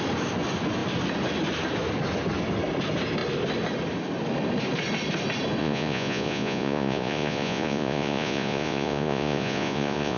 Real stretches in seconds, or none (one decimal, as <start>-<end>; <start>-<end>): 0.0-5.6